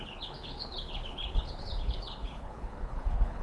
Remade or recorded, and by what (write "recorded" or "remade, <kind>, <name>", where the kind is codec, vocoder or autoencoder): remade, codec, HILCodec